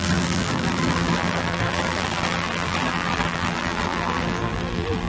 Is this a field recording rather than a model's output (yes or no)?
no